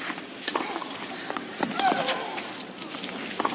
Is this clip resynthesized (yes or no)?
no